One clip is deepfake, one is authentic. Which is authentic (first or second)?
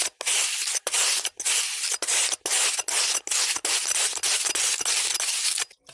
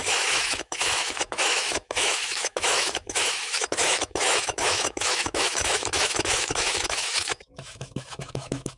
first